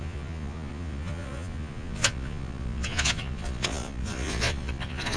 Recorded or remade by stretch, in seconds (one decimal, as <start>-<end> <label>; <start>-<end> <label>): 0.0-5.2 remade